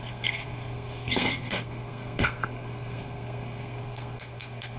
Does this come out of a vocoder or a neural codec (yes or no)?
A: yes